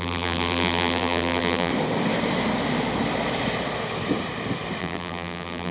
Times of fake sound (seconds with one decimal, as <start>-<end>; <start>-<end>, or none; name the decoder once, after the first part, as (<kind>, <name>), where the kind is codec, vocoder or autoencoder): 0.0-1.7 (vocoder, BigVGAN v2); 4.8-5.7